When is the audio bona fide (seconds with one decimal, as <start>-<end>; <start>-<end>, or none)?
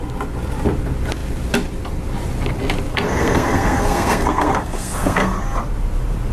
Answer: 0.0-2.9; 5.4-6.3